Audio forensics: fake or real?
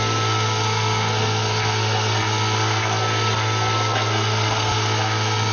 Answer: fake